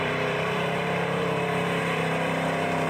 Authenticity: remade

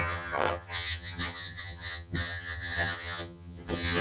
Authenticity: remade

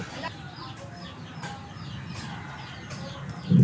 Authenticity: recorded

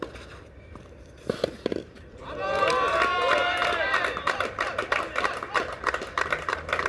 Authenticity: remade